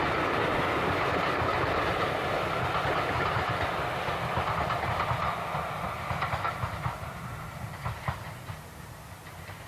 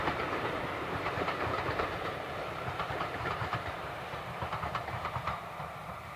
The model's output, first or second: second